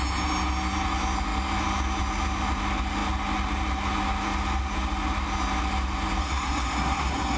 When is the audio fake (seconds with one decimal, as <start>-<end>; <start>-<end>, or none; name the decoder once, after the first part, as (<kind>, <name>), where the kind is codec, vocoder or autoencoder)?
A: 6.2-7.4 (codec, SNAC)

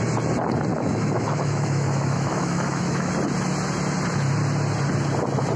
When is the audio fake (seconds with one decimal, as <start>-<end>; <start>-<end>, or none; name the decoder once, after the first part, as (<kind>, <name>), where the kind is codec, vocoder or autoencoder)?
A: 0.7-3.1 (autoencoder, DAC-VAE)